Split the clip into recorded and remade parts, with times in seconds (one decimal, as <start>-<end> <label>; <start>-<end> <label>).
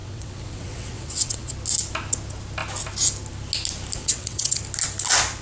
0.0-1.5 remade; 1.5-4.0 recorded; 4.0-4.6 remade; 4.6-5.4 recorded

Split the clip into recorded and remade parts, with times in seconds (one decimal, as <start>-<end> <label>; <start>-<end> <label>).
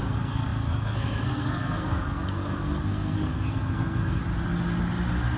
0.0-4.2 remade; 4.2-5.4 recorded